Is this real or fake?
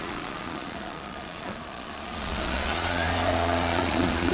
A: fake